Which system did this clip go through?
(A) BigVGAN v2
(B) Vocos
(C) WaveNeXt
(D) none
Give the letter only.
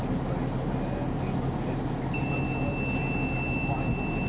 D